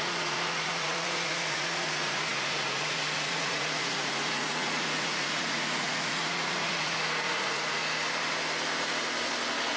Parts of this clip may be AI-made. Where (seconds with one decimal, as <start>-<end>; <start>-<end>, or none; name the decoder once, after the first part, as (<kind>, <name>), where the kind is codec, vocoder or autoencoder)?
0.0-7.8 (vocoder, Vocos)